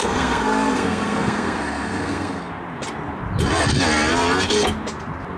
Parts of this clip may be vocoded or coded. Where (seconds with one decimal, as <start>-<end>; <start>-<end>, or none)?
0.0-2.5